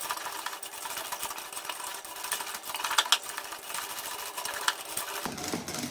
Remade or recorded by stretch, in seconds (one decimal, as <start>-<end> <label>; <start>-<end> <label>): 0.0-1.9 remade; 1.9-5.4 recorded; 5.4-5.9 remade